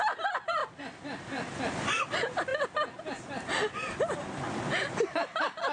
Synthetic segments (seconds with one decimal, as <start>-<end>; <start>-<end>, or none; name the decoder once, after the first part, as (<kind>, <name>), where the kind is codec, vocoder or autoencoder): none